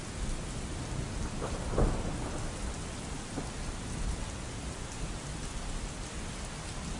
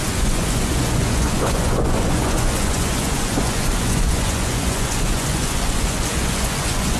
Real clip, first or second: first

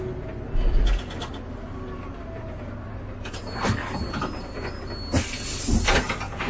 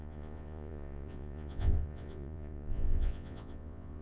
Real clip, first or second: first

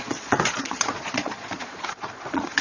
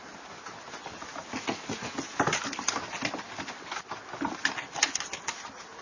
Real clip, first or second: second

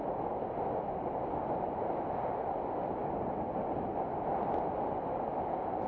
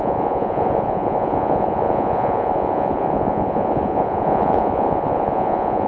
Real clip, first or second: first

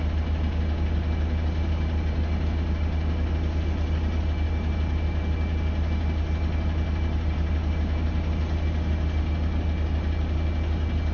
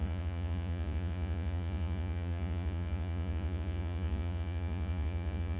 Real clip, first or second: first